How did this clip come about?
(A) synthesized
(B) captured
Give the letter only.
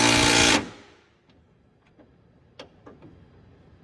B